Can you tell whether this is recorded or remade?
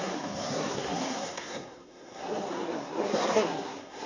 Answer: remade